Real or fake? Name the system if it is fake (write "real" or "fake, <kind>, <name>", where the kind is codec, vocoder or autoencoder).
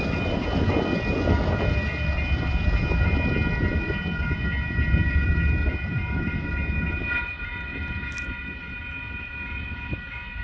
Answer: real